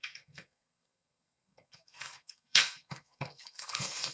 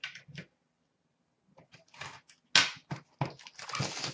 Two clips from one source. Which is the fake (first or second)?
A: first